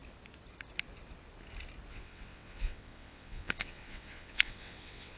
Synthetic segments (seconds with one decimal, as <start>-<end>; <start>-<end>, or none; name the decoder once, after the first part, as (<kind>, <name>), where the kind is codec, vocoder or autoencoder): 1.9-5.2 (vocoder, WaveNeXt)